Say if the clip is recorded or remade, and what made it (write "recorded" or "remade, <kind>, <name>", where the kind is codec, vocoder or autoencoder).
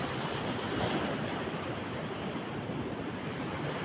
recorded